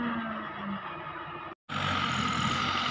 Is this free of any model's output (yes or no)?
yes